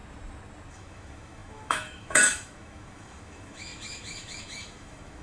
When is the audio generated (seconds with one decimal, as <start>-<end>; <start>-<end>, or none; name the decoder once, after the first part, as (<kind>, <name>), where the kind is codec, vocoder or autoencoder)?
0.7-5.2 (autoencoder, DAC-VAE)